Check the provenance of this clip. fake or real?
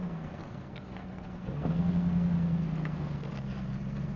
fake